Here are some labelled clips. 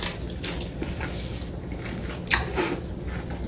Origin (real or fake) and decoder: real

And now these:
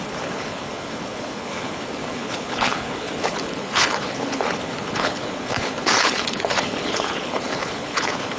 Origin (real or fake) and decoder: fake, codec, HILCodec